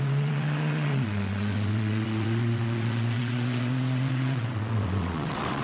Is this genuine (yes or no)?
no